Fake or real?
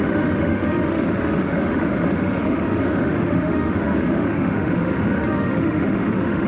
fake